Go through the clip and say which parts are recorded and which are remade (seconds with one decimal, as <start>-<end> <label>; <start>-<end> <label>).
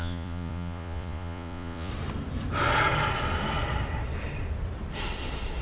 0.0-1.9 remade; 1.9-5.6 recorded